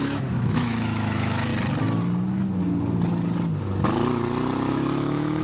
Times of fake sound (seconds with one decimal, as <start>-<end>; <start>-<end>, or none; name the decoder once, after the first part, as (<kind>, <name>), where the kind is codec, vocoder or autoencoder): 0.0-1.5 (autoencoder, DAC-VAE); 4.7-5.4